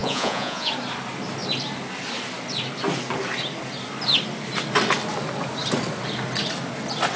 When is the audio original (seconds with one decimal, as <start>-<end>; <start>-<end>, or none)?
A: 0.7-7.2